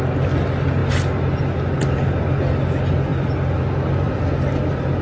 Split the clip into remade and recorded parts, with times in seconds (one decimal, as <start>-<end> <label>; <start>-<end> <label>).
0.0-5.0 recorded